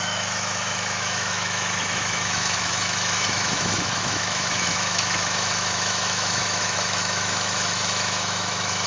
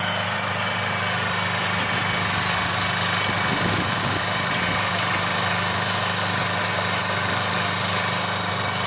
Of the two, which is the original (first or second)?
second